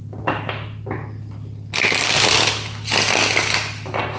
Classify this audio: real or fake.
real